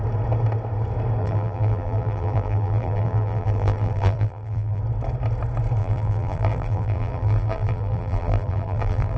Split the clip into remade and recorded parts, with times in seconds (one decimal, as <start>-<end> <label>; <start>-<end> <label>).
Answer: 0.0-1.2 recorded; 1.2-4.8 remade; 4.8-5.8 recorded; 5.8-9.2 remade